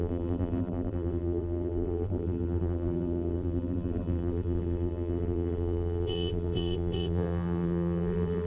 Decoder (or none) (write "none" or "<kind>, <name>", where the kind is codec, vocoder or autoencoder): vocoder, BigVGAN v2